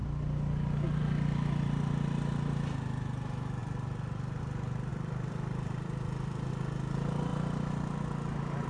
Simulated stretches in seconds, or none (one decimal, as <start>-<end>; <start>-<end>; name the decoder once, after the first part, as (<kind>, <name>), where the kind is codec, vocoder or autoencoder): 3.6-4.4 (vocoder, BigVGAN v2); 4.9-6.5